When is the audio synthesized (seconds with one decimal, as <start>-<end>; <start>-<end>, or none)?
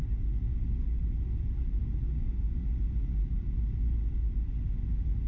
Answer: none